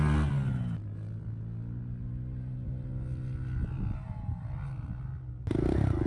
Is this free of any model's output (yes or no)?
yes